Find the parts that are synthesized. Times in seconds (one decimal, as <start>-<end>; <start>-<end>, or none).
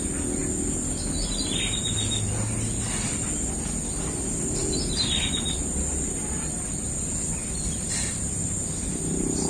7.4-8.8